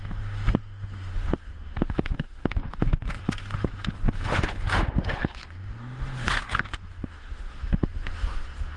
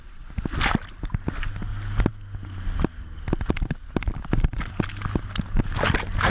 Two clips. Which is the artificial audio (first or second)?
first